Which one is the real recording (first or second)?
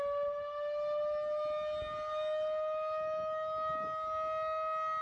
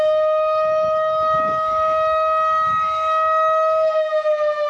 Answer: first